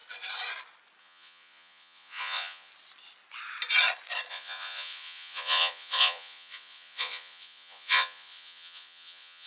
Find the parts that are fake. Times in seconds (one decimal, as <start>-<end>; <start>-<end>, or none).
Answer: 1.0-2.7; 4.3-9.5